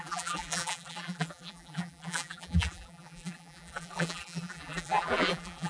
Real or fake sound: fake